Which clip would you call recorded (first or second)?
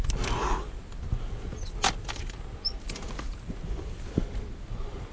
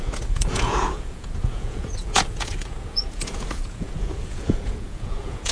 first